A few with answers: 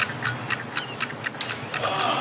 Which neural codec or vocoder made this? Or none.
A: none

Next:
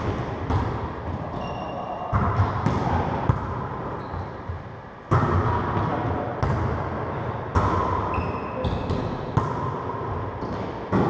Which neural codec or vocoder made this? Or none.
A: none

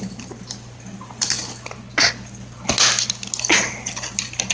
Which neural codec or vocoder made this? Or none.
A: none